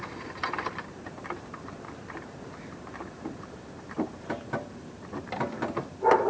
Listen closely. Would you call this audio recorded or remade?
remade